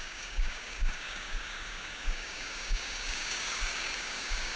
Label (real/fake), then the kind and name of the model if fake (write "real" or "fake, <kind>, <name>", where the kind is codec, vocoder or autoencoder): fake, codec, DAC